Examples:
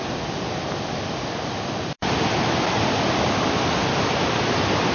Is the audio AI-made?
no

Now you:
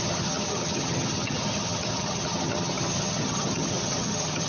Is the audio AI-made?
yes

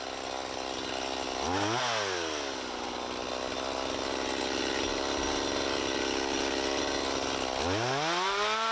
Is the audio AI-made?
no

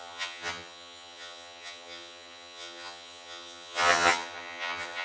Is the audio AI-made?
yes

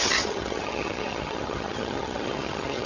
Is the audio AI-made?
yes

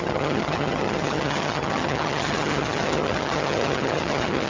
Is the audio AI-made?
yes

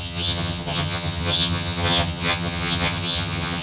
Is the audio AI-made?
yes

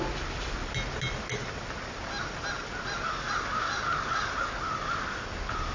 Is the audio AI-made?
no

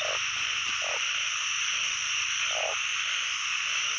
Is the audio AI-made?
no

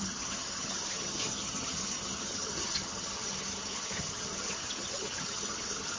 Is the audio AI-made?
yes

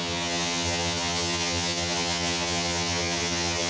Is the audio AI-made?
yes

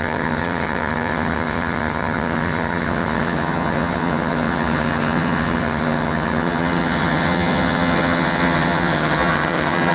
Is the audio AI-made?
yes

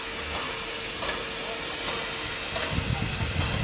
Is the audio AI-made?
no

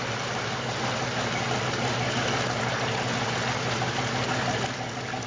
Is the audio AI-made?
no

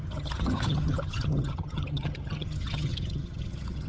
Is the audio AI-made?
yes